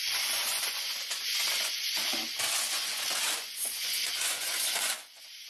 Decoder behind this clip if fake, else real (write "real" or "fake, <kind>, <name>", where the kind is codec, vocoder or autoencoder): fake, vocoder, Vocos